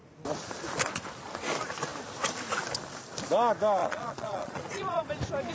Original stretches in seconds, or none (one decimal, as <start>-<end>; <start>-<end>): 0.0-3.8; 5.0-5.5